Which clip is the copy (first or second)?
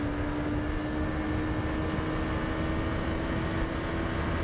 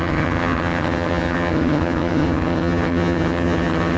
second